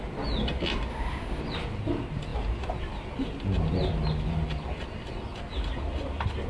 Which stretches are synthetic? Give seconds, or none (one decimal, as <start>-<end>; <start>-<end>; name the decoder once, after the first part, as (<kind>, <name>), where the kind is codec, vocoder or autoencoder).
0.9-1.4 (autoencoder, DAC-VAE)